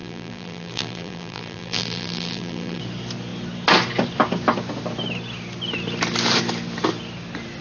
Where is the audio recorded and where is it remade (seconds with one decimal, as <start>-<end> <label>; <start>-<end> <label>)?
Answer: 0.0-2.8 remade; 2.8-7.6 recorded